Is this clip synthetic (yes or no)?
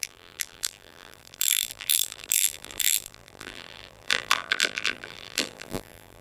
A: yes